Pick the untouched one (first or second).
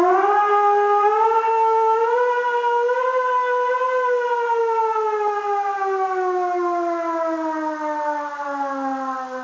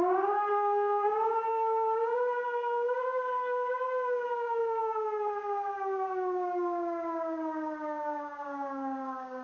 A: first